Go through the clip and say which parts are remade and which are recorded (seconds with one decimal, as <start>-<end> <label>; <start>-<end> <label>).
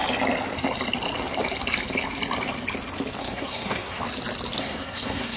0.0-3.2 recorded; 3.2-4.0 remade; 4.0-4.6 recorded; 4.6-5.4 remade